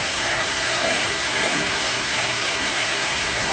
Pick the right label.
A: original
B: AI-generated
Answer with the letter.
B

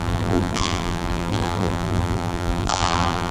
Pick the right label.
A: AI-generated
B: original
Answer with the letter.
A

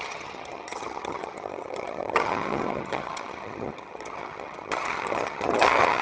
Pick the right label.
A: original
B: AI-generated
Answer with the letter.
B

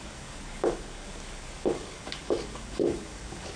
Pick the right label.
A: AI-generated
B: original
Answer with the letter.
A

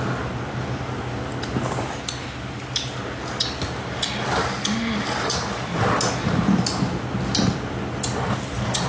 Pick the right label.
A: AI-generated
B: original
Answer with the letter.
B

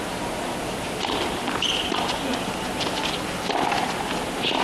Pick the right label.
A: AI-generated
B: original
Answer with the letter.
B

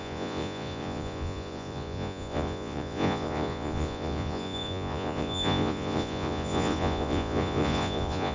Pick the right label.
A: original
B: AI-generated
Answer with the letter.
B